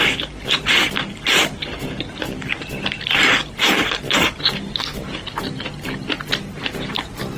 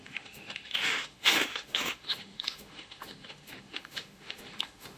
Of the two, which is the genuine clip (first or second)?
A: first